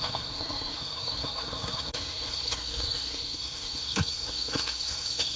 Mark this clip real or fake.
fake